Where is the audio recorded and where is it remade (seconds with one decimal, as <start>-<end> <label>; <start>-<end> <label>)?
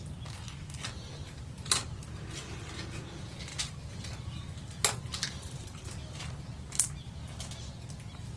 0.0-8.4 recorded